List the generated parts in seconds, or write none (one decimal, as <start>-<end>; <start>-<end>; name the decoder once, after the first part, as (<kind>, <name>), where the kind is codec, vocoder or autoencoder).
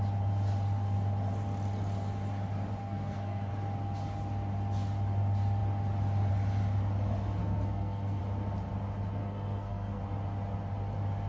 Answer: 2.8-3.5 (codec, SNAC); 7.4-8.2; 9.2-10.0